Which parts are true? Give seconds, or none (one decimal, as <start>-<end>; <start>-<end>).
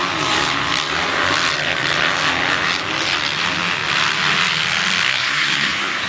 0.0-5.1